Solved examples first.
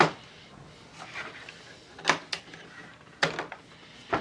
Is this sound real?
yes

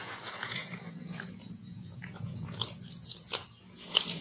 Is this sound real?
no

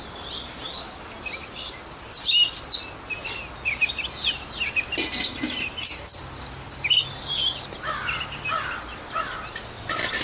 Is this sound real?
yes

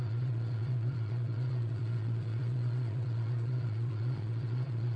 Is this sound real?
no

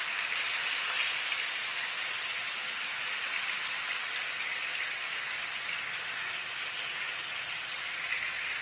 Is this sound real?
yes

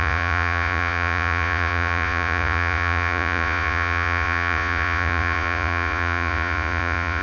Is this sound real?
no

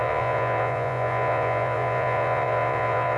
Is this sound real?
no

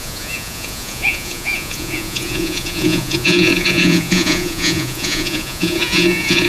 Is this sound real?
no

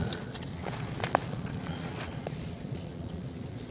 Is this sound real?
no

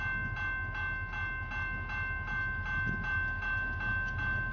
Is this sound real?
yes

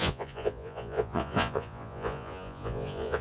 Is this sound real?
no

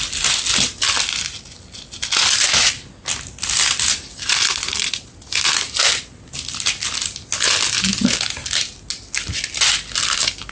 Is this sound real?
yes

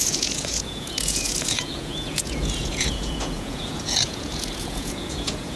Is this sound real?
no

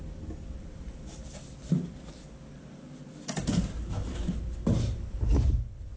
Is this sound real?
yes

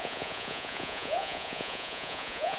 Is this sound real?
no